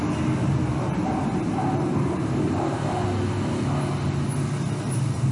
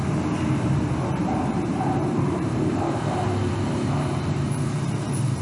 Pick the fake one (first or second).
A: second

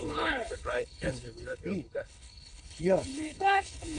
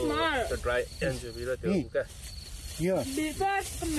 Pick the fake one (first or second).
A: first